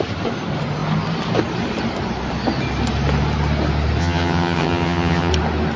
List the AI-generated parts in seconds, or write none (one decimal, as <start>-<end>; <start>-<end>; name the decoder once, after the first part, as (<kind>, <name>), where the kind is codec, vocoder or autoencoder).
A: 4.0-5.3 (vocoder, HiFi-GAN)